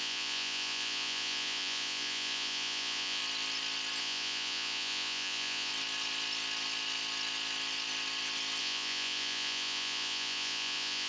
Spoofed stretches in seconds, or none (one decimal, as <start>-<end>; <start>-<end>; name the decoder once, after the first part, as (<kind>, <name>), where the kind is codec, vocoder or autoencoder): 0.0-3.2 (vocoder, Vocos); 4.0-5.7; 8.6-11.1